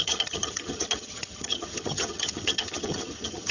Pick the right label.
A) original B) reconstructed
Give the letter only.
B